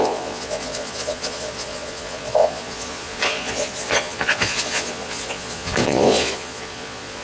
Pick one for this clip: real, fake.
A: fake